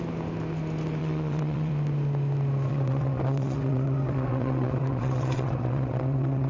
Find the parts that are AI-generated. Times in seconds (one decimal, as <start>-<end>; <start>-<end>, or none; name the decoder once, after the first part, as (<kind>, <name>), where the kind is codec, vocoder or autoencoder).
1.0-1.7 (vocoder, WaveNeXt); 2.7-6.5